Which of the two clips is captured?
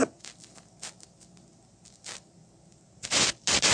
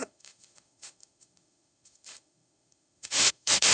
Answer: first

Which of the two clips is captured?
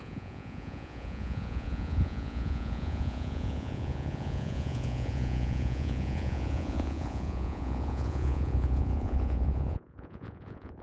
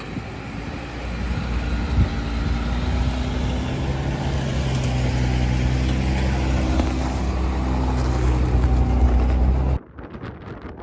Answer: second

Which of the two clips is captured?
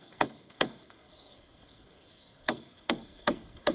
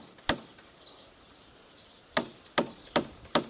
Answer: second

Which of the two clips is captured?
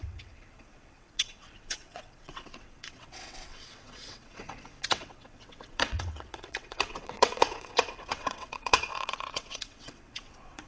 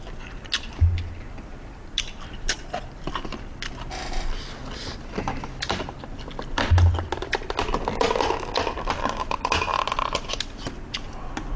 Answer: second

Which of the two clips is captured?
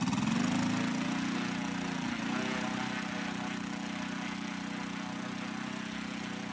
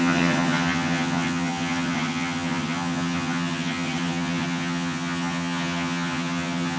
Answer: first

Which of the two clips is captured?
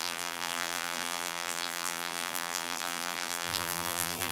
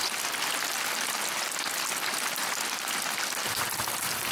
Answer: second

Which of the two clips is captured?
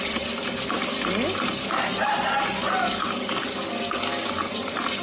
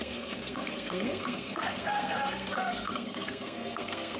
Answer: first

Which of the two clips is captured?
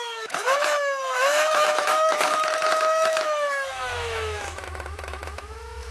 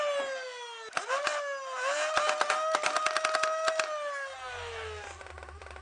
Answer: second